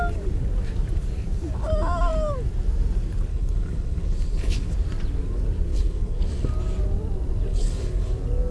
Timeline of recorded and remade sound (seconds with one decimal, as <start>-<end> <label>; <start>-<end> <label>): 0.0-3.3 recorded; 3.3-4.7 remade; 4.7-5.7 recorded; 5.7-6.2 remade; 6.2-7.5 recorded; 7.5-8.1 remade; 8.1-8.5 recorded